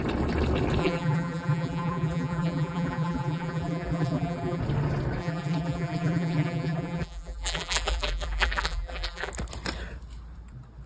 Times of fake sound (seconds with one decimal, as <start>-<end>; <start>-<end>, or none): 0.8-4.6; 5.2-9.3